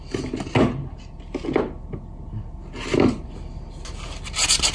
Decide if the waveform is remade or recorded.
recorded